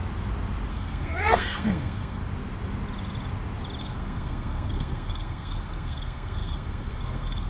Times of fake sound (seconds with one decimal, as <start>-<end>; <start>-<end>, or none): 0.7-2.2; 3.8-7.5

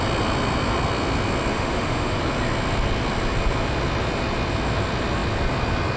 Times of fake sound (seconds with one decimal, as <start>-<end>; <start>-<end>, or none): 1.5-2.2

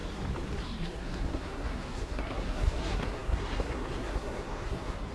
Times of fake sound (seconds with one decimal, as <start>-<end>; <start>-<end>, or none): 0.6-5.1

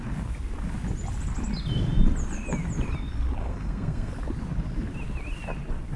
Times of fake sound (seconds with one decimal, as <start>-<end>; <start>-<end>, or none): 3.4-4.1

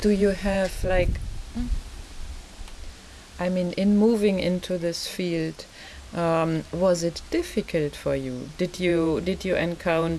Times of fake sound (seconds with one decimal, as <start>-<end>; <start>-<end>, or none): 0.0-0.9; 8.9-10.2

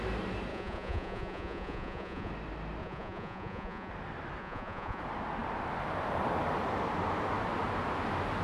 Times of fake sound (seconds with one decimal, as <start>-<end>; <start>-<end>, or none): 0.5-2.3; 2.8-3.9; 4.4-5.0